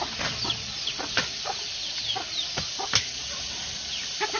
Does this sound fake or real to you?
real